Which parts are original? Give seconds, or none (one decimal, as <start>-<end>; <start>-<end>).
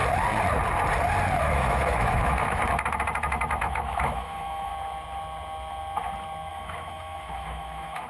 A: 0.0-1.4; 2.6-3.6; 4.7-6.5